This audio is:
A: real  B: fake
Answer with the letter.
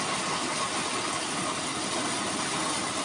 A